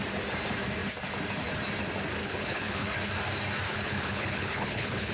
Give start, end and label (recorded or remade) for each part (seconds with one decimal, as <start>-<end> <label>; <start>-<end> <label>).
0.0-2.2 recorded; 2.2-3.0 remade; 3.0-3.7 recorded; 3.7-5.1 remade